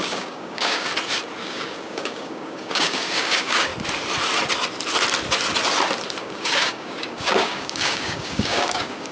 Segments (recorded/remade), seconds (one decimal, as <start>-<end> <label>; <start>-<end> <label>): 0.0-0.9 remade; 0.9-1.4 recorded; 1.4-3.7 remade; 3.7-6.2 recorded; 6.2-9.1 remade